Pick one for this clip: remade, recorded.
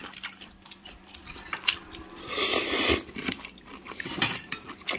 remade